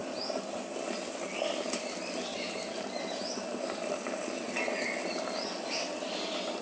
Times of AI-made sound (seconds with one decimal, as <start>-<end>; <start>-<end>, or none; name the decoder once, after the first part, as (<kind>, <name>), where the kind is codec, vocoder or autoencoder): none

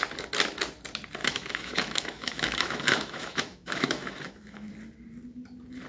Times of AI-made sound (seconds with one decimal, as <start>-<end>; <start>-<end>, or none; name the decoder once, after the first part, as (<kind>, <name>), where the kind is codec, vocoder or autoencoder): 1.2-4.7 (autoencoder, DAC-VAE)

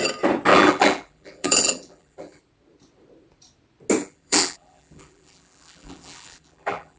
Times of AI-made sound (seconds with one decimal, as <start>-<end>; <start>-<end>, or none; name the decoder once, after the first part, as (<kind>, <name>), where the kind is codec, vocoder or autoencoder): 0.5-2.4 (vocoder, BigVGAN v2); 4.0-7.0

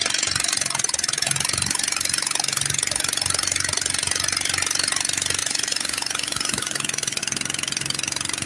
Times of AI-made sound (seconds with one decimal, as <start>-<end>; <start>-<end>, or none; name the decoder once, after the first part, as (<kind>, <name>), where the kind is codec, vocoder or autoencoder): 5.4-7.2 (vocoder, Vocos)

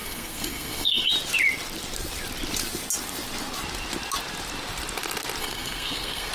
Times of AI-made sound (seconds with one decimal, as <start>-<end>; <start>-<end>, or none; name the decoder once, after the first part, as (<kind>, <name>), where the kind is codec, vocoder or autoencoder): 0.0-1.1 (codec, SNAC); 5.4-6.3

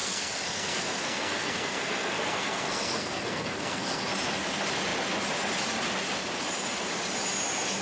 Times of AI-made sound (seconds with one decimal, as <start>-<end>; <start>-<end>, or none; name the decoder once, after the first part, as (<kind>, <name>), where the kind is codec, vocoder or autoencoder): 0.0-4.0 (codec, SNAC)

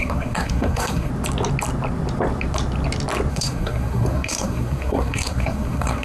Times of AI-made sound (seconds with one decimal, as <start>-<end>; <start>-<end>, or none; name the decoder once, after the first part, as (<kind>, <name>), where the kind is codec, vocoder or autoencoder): 0.0-1.1 (codec, SNAC); 3.3-6.0

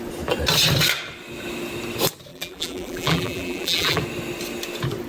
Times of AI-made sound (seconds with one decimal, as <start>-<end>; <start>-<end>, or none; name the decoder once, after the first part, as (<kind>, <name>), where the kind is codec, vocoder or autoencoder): 2.3-4.0 (vocoder, BigVGAN v2)